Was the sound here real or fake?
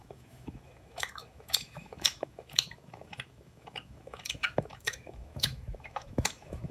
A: fake